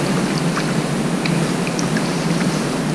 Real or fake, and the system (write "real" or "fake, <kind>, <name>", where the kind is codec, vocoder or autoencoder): real